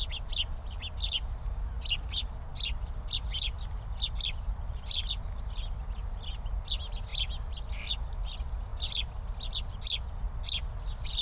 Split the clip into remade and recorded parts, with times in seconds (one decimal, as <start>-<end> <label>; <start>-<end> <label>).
0.0-7.1 recorded; 7.1-7.8 remade; 7.8-11.2 recorded